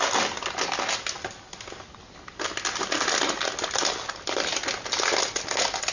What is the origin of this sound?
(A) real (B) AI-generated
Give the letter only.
A